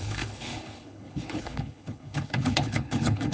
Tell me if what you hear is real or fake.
fake